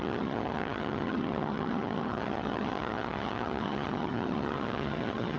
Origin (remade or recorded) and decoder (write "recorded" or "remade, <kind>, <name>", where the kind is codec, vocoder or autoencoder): remade, vocoder, HiFi-GAN